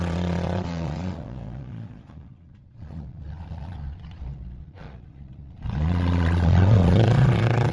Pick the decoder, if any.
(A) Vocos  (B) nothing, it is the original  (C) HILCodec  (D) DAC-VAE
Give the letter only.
A